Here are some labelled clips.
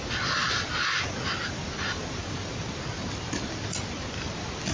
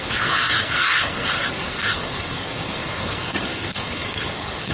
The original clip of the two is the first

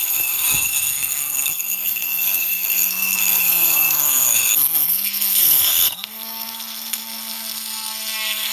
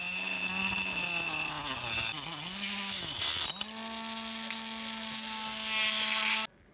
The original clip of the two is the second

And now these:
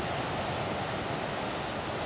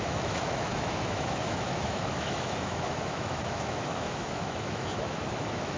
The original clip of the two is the first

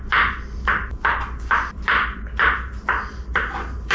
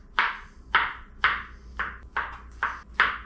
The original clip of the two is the second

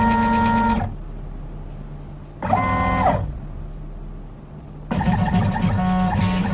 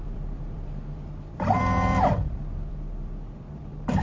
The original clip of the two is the first